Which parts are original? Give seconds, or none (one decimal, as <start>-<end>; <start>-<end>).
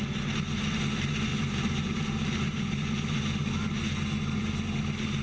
0.0-5.2